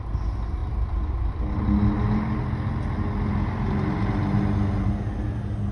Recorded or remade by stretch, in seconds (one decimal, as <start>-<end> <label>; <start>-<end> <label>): 0.0-5.7 recorded